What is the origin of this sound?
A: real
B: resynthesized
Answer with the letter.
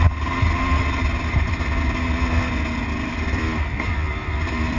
A